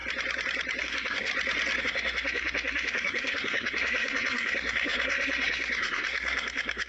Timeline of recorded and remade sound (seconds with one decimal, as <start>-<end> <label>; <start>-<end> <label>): 0.0-0.8 recorded; 0.8-1.3 remade; 1.3-1.8 recorded; 1.8-6.9 remade